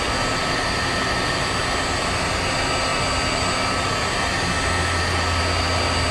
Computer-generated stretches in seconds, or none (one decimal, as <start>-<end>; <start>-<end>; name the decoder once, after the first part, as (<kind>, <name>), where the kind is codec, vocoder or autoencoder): none